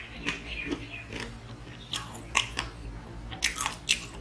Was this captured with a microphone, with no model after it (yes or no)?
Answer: yes